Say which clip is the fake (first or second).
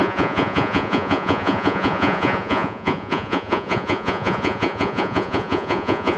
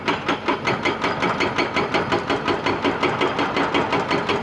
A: first